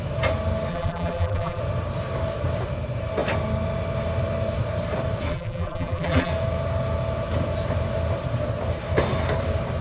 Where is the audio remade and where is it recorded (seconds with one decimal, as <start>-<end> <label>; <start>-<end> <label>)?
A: 0.0-0.7 recorded; 0.7-1.6 remade; 1.6-5.3 recorded; 5.3-6.3 remade; 6.3-9.8 recorded